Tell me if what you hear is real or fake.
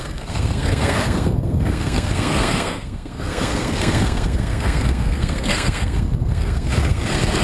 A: fake